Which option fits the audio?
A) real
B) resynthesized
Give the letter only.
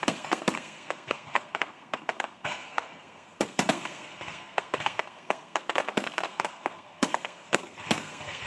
B